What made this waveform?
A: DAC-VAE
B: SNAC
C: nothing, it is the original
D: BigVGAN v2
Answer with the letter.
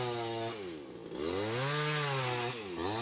C